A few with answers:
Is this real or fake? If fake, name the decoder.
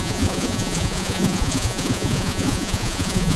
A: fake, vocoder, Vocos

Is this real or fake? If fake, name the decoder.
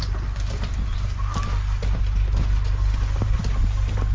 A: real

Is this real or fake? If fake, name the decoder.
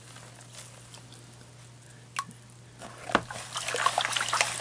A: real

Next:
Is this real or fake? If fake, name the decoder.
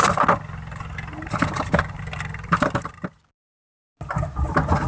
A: real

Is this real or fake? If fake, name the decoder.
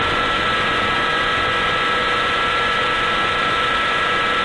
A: fake, vocoder, Vocos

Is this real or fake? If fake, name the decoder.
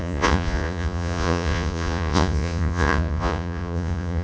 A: fake, vocoder, Vocos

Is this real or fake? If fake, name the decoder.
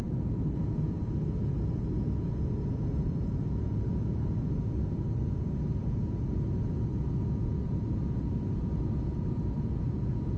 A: fake, vocoder, Vocos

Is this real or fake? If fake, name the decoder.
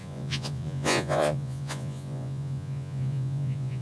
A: fake, vocoder, Vocos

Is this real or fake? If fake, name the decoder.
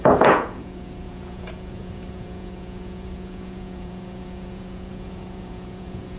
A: fake, vocoder, Vocos